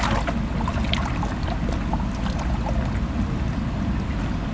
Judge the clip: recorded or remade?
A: recorded